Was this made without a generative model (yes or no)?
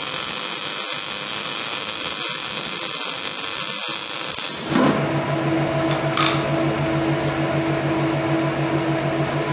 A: yes